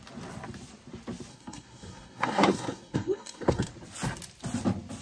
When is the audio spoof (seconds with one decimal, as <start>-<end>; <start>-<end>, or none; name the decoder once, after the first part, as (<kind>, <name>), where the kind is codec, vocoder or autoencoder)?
1.3-3.7 (codec, SNAC)